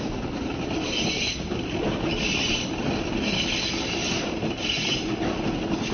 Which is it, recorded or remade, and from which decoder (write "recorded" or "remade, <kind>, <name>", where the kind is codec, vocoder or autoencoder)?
recorded